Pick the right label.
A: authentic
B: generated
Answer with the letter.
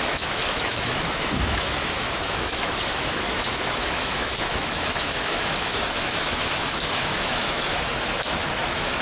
B